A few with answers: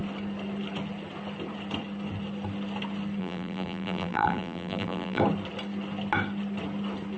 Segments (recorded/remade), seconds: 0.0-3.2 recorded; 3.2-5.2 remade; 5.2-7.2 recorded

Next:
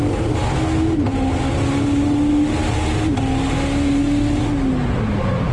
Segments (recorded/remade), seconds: 0.0-5.5 recorded

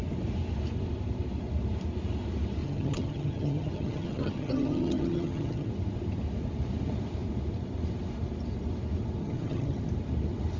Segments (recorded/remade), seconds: 0.0-2.6 recorded; 2.6-5.7 remade; 5.7-9.2 recorded; 9.2-9.8 remade; 9.8-10.6 recorded

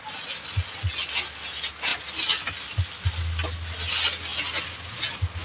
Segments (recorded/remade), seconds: 0.0-5.4 recorded

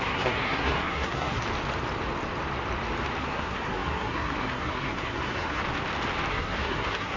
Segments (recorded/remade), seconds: 0.0-1.4 remade; 1.4-3.2 recorded; 3.2-5.6 remade; 5.6-6.3 recorded; 6.3-7.2 remade